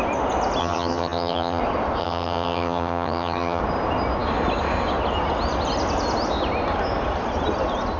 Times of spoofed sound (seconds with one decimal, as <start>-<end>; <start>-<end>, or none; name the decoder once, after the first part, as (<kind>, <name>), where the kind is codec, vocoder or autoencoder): 0.6-1.6 (vocoder, HiFi-GAN); 2.0-3.6

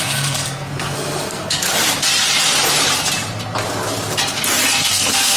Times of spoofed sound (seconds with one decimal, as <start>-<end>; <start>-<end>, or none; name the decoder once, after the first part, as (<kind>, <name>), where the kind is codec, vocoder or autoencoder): 0.0-1.7 (codec, SNAC); 4.9-5.4

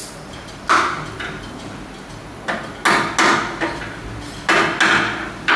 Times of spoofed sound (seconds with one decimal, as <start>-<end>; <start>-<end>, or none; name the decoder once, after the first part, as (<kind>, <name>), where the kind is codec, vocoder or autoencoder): none

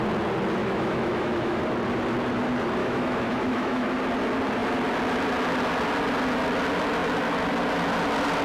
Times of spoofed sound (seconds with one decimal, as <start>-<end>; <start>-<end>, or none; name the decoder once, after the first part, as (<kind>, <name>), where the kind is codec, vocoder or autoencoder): 0.6-1.6 (autoencoder, DAC-VAE); 2.8-3.9

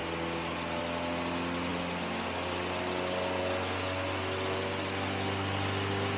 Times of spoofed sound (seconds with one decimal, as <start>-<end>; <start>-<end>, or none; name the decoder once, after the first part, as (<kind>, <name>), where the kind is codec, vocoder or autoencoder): none

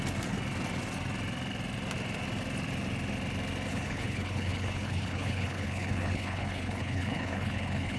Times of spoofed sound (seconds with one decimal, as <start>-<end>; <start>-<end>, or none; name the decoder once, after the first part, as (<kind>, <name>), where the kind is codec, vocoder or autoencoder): 3.7-8.0 (codec, HILCodec)

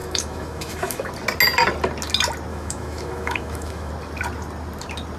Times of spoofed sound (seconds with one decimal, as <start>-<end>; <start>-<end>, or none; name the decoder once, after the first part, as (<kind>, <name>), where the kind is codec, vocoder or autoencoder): 0.0-1.1 (autoencoder, DAC-VAE); 2.5-3.9